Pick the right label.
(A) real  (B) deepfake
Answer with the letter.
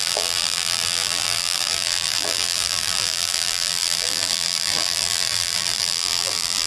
B